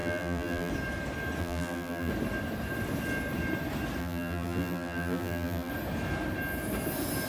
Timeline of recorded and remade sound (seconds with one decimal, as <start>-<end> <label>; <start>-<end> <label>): 0.0-0.7 remade; 0.7-1.4 recorded; 1.4-2.1 remade; 2.1-4.0 recorded; 4.0-5.7 remade; 5.7-7.3 recorded